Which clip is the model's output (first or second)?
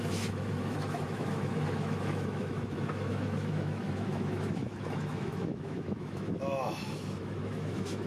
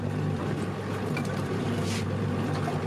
first